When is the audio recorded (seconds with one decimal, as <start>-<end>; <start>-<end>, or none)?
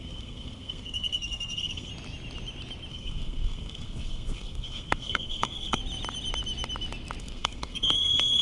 1.9-2.9; 5.8-7.2